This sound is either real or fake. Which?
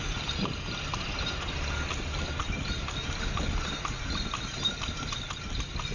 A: real